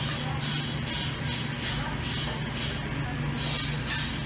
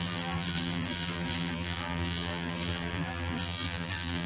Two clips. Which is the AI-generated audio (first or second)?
second